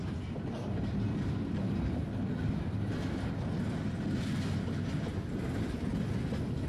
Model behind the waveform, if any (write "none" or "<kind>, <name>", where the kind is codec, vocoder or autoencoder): none